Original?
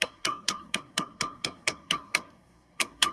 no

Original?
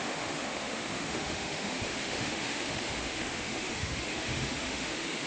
no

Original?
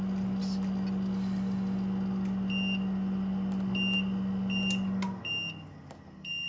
yes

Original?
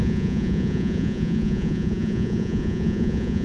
no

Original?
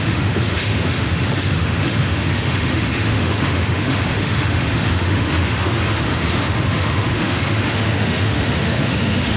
no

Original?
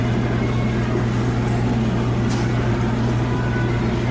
yes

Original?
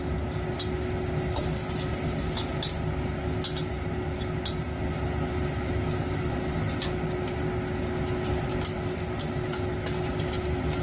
yes